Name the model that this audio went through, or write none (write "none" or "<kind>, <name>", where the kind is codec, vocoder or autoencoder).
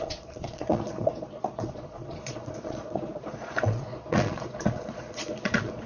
vocoder, Vocos